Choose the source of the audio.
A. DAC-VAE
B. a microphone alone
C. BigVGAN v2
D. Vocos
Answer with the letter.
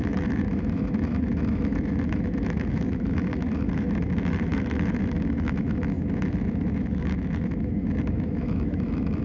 A